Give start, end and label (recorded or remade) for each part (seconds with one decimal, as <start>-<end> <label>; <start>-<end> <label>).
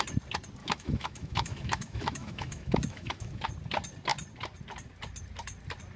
0.0-0.6 recorded; 0.6-3.5 remade; 3.5-6.0 recorded